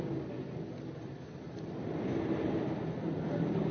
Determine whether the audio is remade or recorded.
recorded